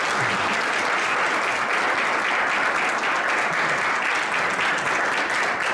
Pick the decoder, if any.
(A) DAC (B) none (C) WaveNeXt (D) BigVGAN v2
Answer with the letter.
B